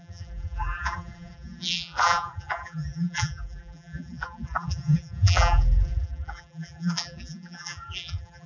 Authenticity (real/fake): fake